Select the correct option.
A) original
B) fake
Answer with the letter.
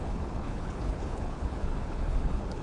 B